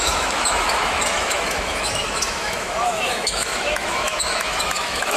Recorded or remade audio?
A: remade